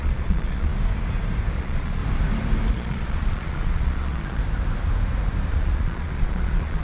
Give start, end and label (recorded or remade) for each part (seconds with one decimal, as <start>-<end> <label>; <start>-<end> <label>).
0.0-0.7 remade; 0.7-1.6 recorded; 1.6-2.0 remade; 2.0-2.7 recorded; 2.7-4.4 remade; 4.4-5.5 recorded; 5.5-6.8 remade